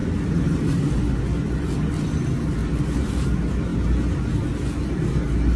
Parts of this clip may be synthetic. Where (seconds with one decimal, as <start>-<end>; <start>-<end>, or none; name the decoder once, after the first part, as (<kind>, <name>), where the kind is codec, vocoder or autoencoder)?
none